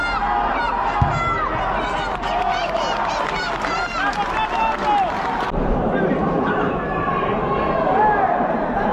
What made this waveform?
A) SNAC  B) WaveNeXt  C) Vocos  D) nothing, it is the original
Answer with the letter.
D